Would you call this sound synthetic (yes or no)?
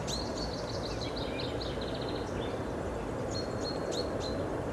no